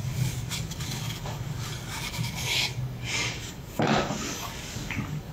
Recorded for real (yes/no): no